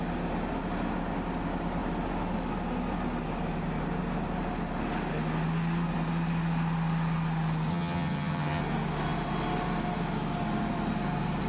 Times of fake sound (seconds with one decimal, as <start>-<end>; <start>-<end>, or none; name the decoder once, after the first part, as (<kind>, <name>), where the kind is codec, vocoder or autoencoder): 7.7-8.6 (vocoder, HiFi-GAN)

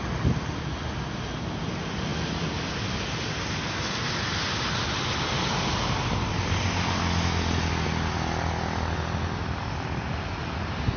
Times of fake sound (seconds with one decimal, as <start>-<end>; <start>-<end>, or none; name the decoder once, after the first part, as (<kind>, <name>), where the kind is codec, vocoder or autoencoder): none

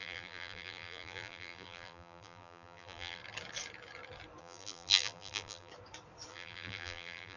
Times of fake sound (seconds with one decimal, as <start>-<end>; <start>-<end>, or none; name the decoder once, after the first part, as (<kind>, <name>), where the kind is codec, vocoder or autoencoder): 0.0-3.2 (vocoder, BigVGAN v2); 4.4-5.7; 6.3-7.4

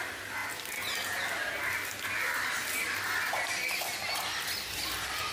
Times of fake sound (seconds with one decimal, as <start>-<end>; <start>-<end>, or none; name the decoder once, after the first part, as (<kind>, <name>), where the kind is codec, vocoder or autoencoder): none

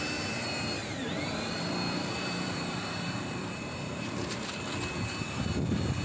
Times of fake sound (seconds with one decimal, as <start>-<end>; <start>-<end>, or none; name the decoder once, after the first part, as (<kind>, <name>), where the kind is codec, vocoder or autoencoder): 0.8-4.4 (vocoder, BigVGAN v2)

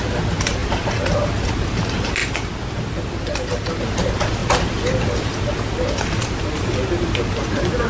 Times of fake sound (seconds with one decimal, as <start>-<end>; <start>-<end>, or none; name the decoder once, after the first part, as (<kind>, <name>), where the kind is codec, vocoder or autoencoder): none

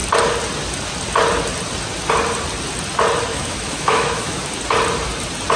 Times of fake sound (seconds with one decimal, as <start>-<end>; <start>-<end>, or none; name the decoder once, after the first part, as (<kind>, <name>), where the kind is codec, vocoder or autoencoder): 3.3-4.4 (autoencoder, DAC-VAE)